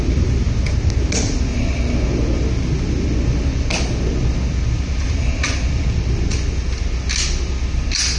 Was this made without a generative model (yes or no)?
yes